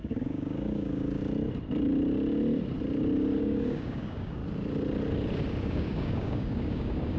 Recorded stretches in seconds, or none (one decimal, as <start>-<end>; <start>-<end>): 1.2-3.4; 4.4-5.6